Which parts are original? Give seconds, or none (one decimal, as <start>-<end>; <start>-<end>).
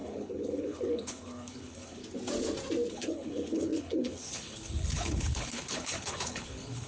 2.0-2.9